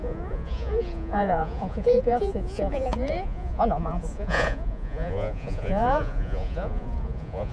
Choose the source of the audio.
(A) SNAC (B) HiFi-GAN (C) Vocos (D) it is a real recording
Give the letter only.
C